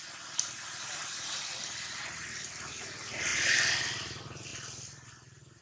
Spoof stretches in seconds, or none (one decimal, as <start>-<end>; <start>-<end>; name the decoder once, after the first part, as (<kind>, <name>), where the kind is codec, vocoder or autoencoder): none